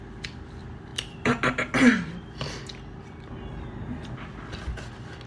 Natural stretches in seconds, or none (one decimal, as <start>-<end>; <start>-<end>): 0.0-5.3